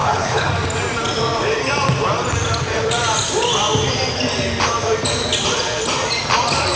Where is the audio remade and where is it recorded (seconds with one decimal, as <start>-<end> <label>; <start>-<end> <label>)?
0.0-0.5 remade; 0.5-6.8 recorded